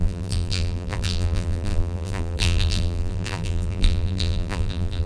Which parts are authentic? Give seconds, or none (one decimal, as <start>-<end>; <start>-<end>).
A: none